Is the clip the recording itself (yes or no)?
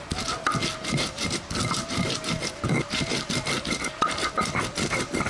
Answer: yes